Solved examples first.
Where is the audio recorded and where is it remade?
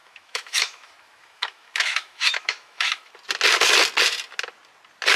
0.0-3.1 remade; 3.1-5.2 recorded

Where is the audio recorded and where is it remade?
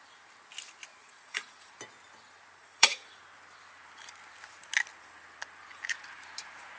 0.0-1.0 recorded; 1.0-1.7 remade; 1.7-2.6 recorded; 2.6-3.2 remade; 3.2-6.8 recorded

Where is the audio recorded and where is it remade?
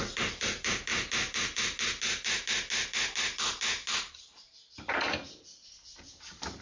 0.0-6.6 recorded